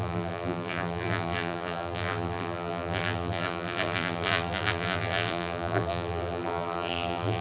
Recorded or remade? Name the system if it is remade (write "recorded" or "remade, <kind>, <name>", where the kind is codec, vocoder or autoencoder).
remade, vocoder, BigVGAN v2